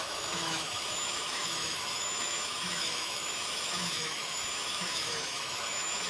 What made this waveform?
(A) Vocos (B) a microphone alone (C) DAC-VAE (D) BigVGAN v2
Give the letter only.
C